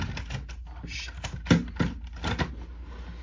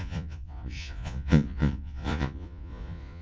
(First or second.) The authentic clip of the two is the first